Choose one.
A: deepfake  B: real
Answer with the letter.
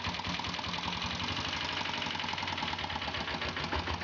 B